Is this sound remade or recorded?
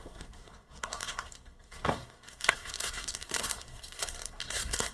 remade